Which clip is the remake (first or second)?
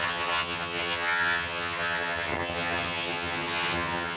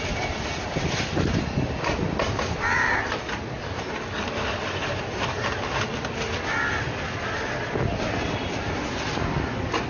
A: first